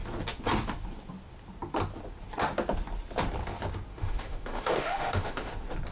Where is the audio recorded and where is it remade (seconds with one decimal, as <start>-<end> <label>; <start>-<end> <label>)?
0.0-3.9 recorded; 3.9-5.5 remade; 5.5-5.9 recorded